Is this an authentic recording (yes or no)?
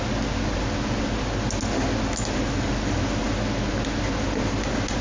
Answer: yes